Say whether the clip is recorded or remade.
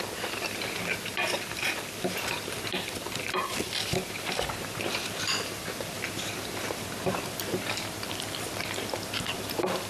remade